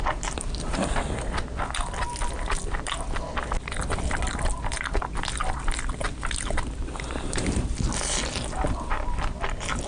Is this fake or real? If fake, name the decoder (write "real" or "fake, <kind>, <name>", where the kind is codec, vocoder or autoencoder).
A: real